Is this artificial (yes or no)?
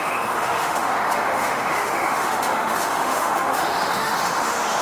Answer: yes